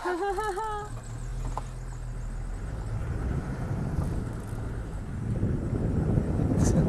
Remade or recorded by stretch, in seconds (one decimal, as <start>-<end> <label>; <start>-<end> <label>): 0.0-3.0 recorded; 3.0-5.7 remade; 5.7-6.9 recorded